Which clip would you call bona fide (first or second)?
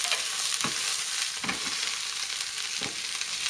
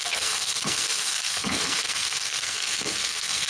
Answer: first